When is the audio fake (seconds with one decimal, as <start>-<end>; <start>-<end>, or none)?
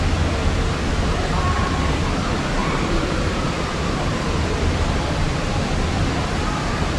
2.6-7.0